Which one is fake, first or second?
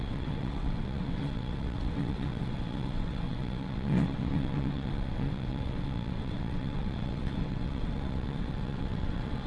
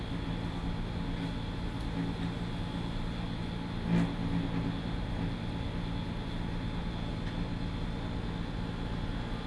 first